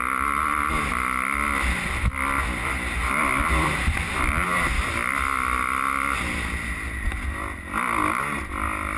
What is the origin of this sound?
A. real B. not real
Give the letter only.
A